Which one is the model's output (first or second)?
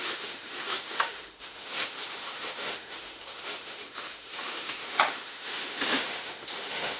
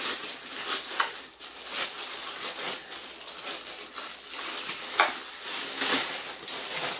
first